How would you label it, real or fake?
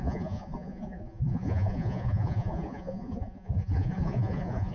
fake